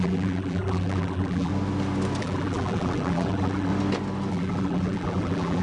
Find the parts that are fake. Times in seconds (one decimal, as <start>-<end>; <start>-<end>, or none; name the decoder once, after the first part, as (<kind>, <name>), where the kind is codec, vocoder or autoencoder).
0.0-1.5 (vocoder, BigVGAN v2); 2.2-3.7; 4.3-5.6